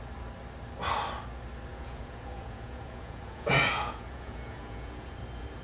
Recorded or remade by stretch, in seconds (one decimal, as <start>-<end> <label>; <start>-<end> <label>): 0.0-1.7 recorded; 1.7-5.1 remade; 5.1-5.6 recorded